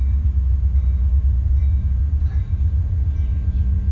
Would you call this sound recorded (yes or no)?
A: yes